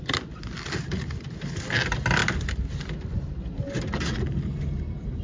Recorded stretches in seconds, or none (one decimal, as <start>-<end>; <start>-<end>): 0.0-5.2